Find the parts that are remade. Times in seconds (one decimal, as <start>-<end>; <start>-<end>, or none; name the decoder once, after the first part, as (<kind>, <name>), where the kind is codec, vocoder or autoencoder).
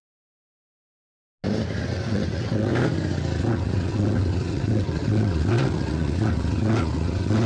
0.0-0.4 (vocoder, WaveNeXt); 1.8-2.7; 3.4-7.5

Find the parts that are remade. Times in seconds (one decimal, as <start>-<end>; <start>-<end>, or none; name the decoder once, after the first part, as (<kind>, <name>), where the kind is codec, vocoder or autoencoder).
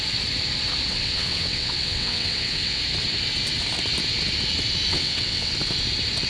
0.9-2.8 (vocoder, WaveNeXt); 4.9-5.5